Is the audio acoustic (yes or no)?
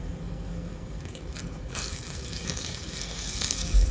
no